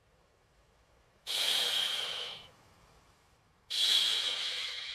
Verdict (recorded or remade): remade